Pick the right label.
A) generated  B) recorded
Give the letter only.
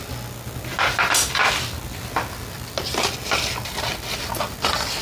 B